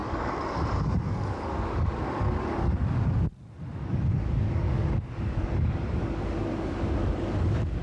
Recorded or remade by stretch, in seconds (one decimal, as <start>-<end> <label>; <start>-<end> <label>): 0.0-3.0 remade; 3.0-3.7 recorded; 3.7-7.8 remade